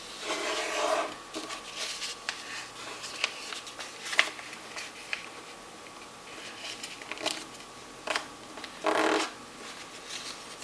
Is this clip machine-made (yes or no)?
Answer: no